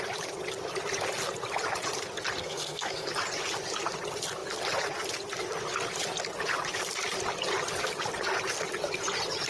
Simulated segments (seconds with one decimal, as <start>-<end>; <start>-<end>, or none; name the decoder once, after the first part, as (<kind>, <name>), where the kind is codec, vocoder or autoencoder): 2.4-3.1 (codec, SNAC)